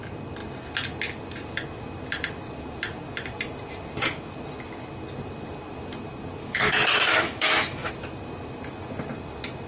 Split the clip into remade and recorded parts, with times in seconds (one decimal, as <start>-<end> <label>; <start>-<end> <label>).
0.0-6.4 recorded; 6.4-7.9 remade; 7.9-9.7 recorded